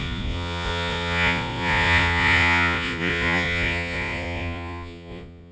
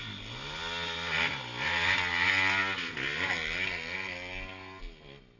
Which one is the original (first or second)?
second